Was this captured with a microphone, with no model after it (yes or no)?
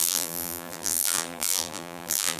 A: no